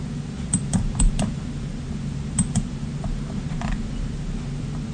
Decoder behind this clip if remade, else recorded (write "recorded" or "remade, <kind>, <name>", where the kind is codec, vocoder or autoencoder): remade, vocoder, BigVGAN v2